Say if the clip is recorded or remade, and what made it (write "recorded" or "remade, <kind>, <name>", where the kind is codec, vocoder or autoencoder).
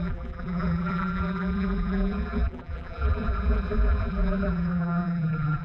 remade, vocoder, BigVGAN v2